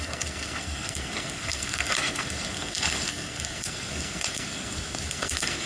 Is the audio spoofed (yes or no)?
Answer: yes